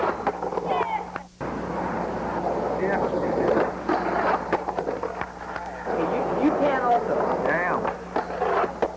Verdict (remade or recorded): recorded